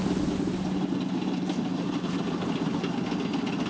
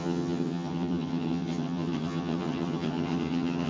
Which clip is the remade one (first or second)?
second